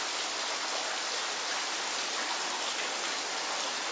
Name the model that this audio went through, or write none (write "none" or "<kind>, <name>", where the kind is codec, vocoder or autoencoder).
none